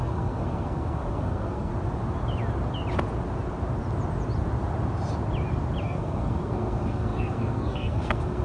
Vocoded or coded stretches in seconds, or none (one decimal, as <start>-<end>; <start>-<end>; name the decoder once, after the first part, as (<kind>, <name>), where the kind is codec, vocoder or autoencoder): 0.0-1.7 (codec, SNAC); 5.8-8.4